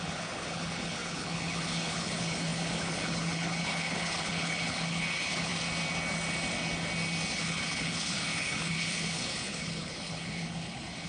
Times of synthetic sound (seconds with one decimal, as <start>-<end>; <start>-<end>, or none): 0.0-5.5; 7.3-11.1